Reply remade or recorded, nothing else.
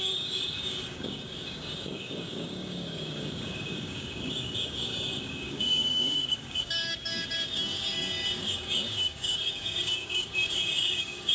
remade